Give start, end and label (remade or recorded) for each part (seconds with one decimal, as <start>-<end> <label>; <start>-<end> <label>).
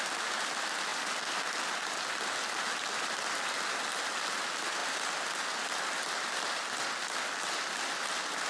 0.0-8.5 recorded